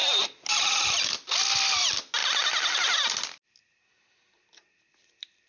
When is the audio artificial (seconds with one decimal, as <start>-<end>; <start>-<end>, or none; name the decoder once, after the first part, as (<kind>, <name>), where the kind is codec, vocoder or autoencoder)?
0.0-1.0 (vocoder, BigVGAN v2)